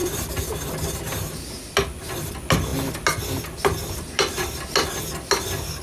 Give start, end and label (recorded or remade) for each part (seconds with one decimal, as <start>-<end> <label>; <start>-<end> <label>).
0.0-5.8 recorded